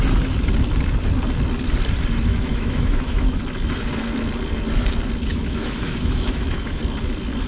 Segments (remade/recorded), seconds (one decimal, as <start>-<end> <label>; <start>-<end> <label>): 0.0-2.3 recorded; 2.3-3.4 remade; 3.4-5.3 recorded; 5.3-6.8 remade; 6.8-7.5 recorded